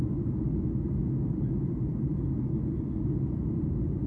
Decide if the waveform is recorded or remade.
recorded